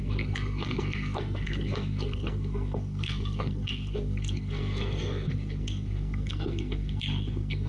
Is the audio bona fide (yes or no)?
no